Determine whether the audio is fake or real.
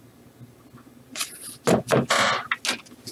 real